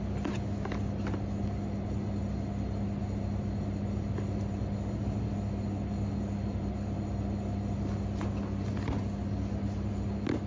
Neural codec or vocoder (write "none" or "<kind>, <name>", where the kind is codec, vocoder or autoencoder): none